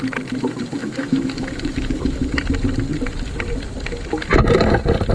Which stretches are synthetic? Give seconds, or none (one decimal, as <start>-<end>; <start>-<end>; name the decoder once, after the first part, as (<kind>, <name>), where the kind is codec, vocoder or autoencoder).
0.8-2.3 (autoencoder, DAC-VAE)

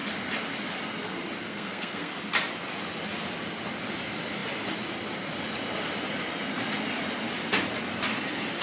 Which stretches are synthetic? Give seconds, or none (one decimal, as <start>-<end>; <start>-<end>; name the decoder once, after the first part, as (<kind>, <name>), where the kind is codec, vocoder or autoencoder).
1.5-2.1 (codec, SNAC)

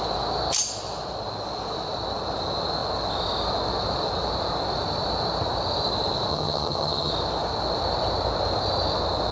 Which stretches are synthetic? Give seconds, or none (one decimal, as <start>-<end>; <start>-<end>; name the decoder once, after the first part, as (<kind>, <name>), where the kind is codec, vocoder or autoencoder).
6.3-7.1 (vocoder, HiFi-GAN)

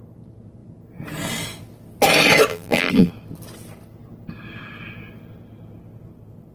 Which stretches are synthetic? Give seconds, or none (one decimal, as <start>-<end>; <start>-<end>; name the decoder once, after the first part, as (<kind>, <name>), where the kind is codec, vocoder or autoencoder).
2.5-3.1 (vocoder, BigVGAN v2)

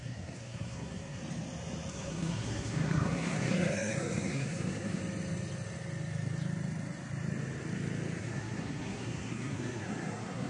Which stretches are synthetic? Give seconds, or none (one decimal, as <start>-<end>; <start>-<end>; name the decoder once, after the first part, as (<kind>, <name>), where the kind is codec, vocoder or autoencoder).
0.0-1.2 (codec, SNAC); 1.9-5.0; 8.2-10.5

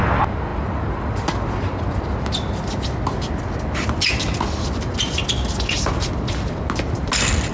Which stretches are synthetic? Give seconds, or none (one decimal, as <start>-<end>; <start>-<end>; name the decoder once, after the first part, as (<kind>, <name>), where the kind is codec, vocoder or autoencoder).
none

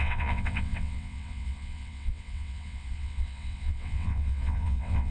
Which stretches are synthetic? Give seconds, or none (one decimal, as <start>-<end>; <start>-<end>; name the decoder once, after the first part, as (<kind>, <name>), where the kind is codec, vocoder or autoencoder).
0.0-5.1 (vocoder, WaveNeXt)